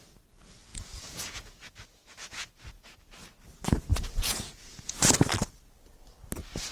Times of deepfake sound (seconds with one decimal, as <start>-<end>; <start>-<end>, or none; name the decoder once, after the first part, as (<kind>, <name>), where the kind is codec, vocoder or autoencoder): 0.7-3.0 (vocoder, Vocos); 3.9-5.0